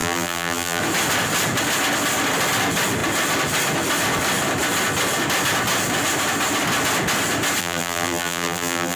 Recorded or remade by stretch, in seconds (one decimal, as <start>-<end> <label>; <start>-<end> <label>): 0.0-0.8 remade; 0.8-7.6 recorded; 7.6-9.0 remade

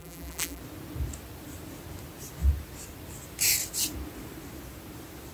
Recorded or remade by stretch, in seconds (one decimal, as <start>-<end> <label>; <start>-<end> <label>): 0.0-0.6 remade; 0.6-5.3 recorded